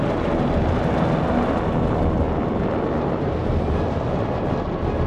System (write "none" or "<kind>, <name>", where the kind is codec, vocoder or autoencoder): none